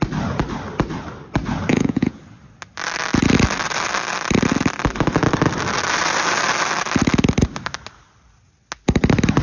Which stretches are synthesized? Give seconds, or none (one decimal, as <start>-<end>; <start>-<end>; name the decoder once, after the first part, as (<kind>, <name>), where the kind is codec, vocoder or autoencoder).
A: 1.7-2.2 (vocoder, Vocos)